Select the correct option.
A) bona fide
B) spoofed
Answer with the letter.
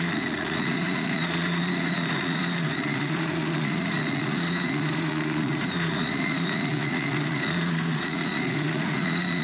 B